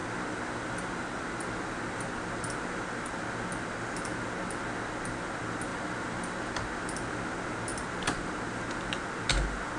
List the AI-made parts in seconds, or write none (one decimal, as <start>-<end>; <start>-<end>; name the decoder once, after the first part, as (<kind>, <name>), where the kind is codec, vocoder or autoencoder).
0.0-3.5 (vocoder, BigVGAN v2); 5.7-6.6; 7.7-8.4